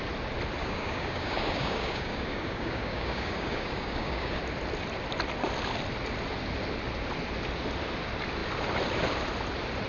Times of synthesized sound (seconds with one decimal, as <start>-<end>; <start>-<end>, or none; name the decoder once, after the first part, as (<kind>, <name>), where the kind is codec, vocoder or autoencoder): 0.6-4.4 (codec, DAC)